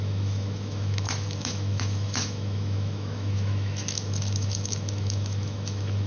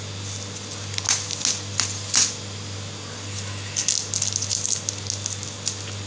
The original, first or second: second